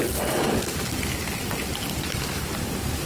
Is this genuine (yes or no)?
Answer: yes